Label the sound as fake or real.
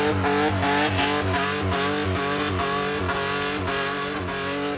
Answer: real